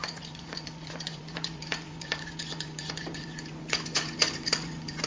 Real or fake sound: fake